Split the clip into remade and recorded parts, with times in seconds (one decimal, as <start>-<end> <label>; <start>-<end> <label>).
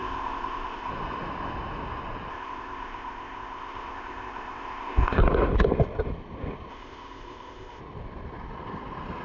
0.0-0.9 remade; 0.9-2.3 recorded; 2.3-5.2 remade; 5.2-6.7 recorded; 6.7-7.8 remade; 7.8-9.2 recorded